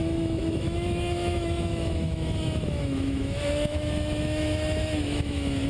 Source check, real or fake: fake